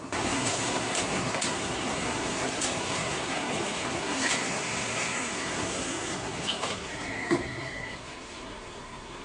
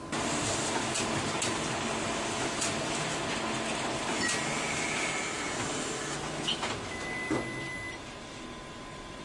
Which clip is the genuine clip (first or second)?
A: second